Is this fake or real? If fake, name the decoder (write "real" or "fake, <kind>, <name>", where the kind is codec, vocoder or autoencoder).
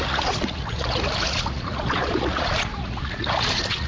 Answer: fake, vocoder, Vocos